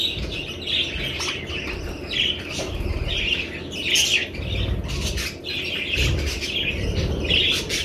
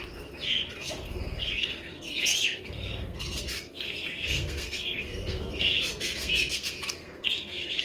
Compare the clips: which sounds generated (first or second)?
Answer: second